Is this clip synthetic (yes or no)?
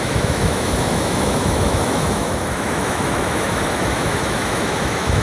yes